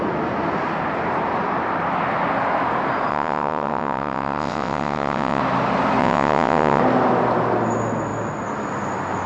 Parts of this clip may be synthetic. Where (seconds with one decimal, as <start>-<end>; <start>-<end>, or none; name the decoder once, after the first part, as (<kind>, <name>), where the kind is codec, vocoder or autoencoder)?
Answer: 3.1-5.4 (vocoder, WaveNeXt); 6.0-6.8